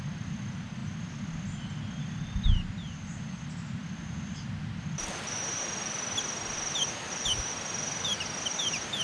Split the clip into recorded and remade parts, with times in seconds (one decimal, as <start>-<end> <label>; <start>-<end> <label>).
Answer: 0.0-9.0 recorded